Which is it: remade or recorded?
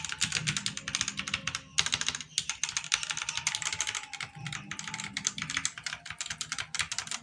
recorded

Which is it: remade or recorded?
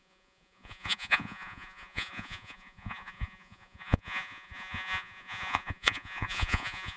remade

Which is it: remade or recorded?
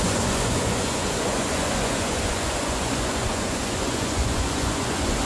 remade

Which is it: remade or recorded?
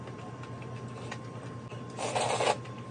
recorded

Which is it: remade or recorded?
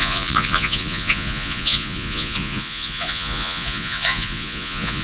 remade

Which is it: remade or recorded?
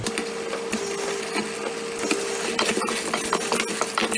recorded